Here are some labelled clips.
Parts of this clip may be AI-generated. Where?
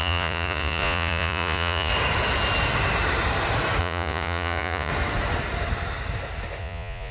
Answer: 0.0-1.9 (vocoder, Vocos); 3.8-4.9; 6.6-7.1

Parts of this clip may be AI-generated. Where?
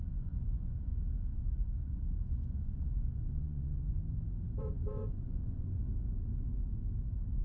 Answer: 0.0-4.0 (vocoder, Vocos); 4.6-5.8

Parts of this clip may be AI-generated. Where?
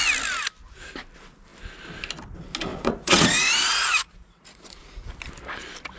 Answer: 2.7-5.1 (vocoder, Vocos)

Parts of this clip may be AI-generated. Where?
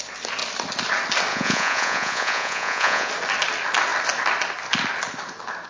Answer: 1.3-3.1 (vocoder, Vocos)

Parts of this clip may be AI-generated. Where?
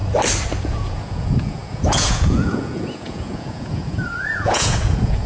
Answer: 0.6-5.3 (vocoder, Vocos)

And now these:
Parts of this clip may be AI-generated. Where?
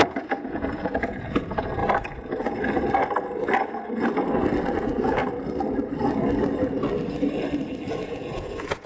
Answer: 0.0-1.8 (vocoder, Vocos); 4.8-5.2; 7.9-8.9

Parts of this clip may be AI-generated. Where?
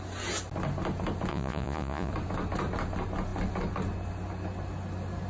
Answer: 1.3-2.1 (vocoder, Vocos)